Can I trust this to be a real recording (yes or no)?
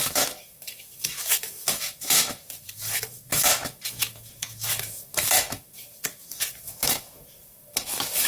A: no